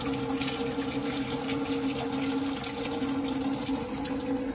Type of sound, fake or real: real